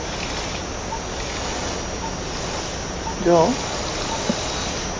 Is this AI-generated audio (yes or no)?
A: no